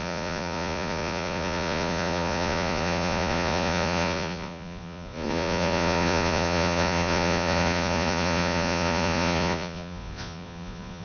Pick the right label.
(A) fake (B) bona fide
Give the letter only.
A